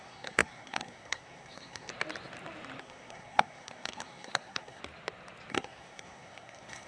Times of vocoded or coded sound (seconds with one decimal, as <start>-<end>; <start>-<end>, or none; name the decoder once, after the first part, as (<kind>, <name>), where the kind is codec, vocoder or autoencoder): 0.0-1.9 (codec, SNAC); 2.8-4.8; 5.5-6.9